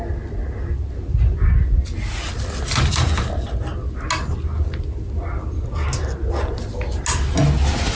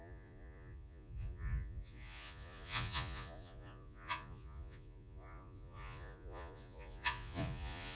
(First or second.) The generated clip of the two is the second